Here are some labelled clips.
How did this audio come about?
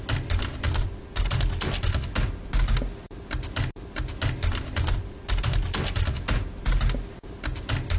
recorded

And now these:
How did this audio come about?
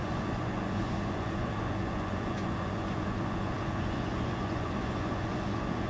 remade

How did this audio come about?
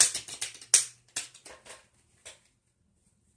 recorded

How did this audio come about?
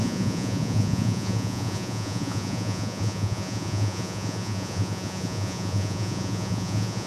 remade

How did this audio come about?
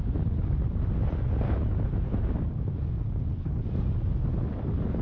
recorded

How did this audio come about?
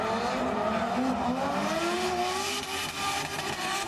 recorded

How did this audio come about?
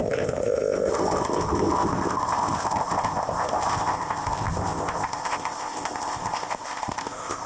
remade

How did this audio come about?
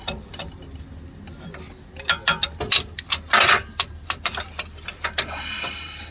recorded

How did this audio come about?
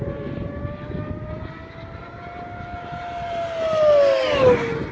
recorded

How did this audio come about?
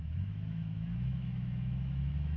remade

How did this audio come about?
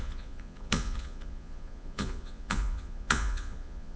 remade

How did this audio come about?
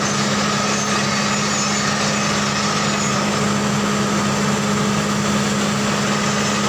recorded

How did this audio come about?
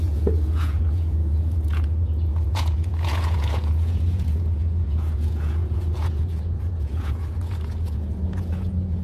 remade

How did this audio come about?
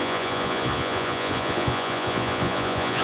remade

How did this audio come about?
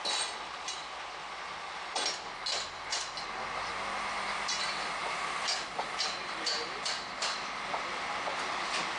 recorded